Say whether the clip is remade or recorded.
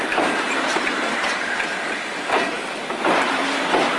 remade